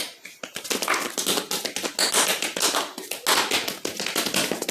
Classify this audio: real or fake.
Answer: real